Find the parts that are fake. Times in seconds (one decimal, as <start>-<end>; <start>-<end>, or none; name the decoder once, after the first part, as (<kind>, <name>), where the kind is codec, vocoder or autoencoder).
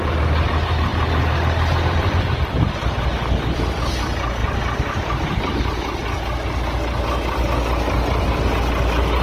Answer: none